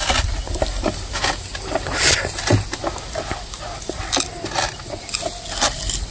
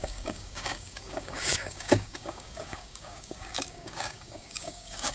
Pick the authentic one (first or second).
first